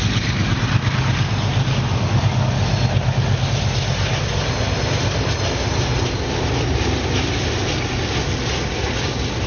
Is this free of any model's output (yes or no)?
yes